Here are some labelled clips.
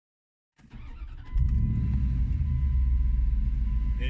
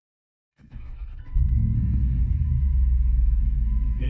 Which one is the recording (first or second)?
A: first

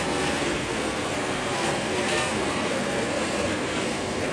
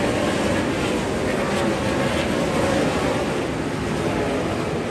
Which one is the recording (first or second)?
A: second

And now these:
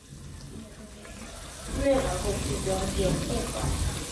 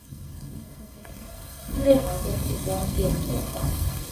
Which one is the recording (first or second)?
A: first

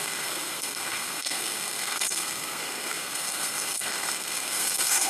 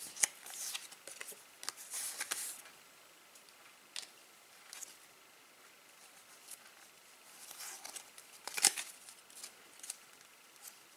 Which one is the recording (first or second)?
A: second